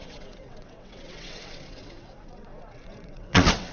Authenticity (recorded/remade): remade